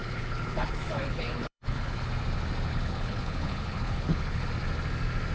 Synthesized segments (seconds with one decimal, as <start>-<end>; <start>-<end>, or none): 0.0-2.1; 2.7-4.5